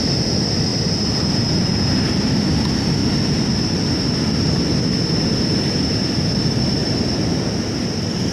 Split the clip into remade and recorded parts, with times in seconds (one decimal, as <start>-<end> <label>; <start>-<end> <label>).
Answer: 0.0-8.3 recorded